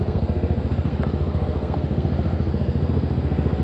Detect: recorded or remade remade